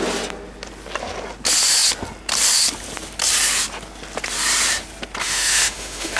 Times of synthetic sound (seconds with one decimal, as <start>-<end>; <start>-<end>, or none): 5.2-6.2